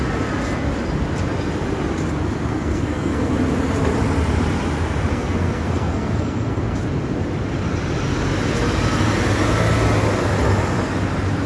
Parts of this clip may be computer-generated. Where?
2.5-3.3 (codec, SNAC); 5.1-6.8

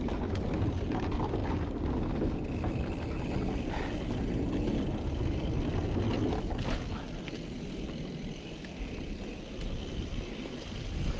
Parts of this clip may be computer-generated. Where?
none

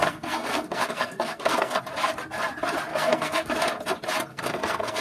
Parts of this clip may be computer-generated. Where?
0.0-1.8 (codec, SNAC); 2.9-3.6; 4.3-5.0

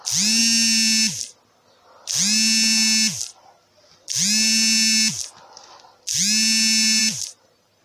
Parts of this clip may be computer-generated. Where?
7.0-7.8 (vocoder, BigVGAN v2)